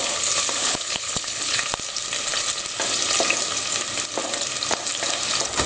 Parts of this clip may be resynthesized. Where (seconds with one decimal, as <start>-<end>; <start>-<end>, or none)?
0.6-1.6